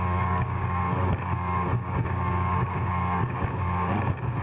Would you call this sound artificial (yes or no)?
yes